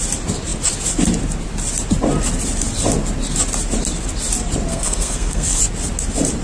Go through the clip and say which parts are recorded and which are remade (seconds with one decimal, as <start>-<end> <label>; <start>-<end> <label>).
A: 0.0-4.7 recorded; 4.7-5.6 remade; 5.6-6.4 recorded